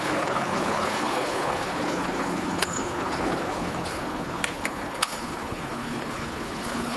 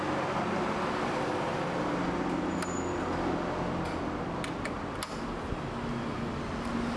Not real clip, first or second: first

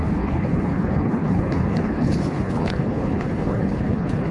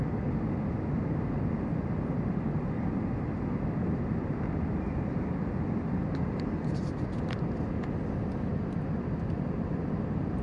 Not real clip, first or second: first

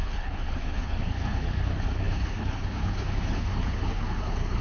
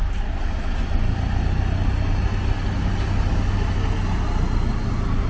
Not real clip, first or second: first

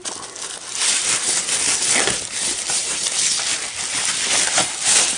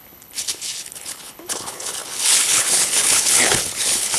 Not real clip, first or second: second